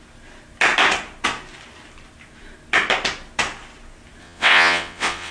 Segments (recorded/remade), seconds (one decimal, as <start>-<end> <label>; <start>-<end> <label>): 0.0-4.2 recorded; 4.2-5.3 remade